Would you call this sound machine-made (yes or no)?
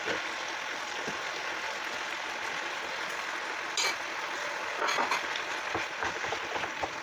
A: no